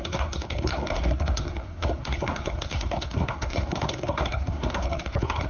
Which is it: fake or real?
fake